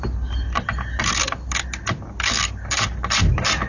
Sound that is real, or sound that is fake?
real